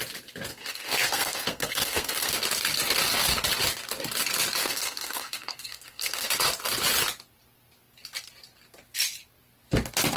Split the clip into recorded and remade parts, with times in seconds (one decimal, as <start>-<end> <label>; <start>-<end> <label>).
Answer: 0.0-0.5 recorded; 0.5-2.3 remade; 2.3-4.6 recorded; 4.6-6.3 remade; 6.3-10.2 recorded